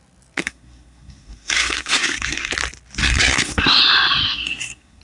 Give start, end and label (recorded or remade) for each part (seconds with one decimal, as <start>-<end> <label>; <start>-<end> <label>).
0.0-0.4 recorded; 0.4-2.5 remade; 2.5-3.0 recorded; 3.0-3.8 remade; 3.8-4.2 recorded; 4.2-5.0 remade